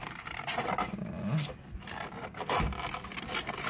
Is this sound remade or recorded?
recorded